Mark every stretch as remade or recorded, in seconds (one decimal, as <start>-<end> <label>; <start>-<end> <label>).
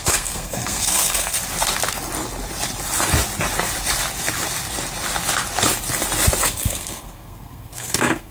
0.0-1.4 remade; 1.4-6.4 recorded; 6.4-8.3 remade